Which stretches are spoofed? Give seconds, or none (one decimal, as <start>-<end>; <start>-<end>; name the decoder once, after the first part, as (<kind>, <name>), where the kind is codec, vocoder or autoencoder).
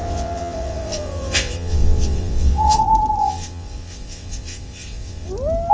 0.0-2.8 (vocoder, WaveNeXt); 3.2-5.3